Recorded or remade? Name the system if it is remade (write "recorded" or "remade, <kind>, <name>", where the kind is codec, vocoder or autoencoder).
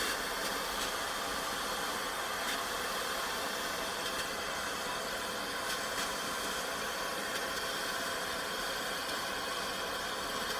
recorded